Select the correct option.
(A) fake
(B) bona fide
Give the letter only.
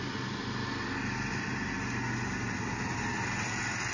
B